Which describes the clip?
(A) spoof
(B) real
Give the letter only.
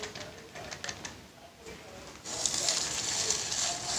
B